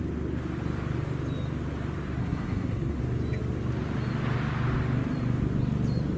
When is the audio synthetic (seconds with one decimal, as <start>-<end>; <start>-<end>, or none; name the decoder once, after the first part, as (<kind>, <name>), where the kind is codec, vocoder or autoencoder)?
2.2-3.0 (codec, SNAC)